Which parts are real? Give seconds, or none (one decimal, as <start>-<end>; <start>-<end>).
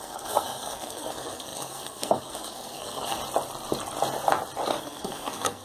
3.2-4.8